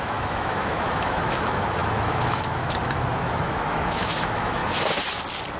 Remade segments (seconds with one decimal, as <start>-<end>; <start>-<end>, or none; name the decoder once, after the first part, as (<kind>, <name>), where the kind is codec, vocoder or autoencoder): 0.0-4.6 (autoencoder, DAC-VAE)

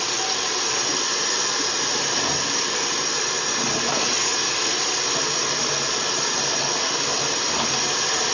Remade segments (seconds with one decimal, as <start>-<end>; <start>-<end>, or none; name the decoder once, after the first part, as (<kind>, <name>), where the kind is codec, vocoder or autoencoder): none

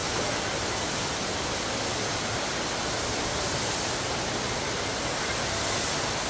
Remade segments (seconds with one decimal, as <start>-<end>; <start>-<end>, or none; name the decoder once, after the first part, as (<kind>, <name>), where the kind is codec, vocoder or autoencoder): none

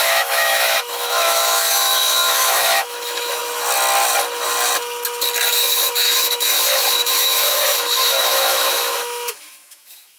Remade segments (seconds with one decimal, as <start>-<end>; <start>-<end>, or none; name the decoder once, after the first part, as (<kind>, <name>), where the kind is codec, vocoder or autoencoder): 0.0-3.4 (autoencoder, DAC-VAE); 5.5-10.2

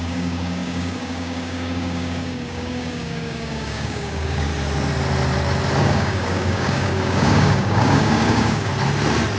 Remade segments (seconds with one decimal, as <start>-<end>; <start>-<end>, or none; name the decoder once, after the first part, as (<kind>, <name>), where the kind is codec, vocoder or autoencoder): 0.0-4.5 (codec, DAC); 5.8-8.7

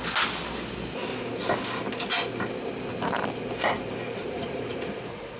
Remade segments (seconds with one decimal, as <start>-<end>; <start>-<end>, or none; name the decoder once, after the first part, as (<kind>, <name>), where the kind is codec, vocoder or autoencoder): 4.2-5.4 (vocoder, Vocos)

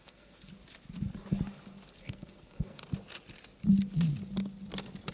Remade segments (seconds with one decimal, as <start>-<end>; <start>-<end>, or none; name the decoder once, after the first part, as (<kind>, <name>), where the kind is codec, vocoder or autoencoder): 0.0-0.5 (codec, SNAC); 2.0-2.8